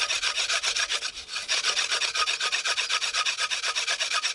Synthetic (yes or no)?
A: no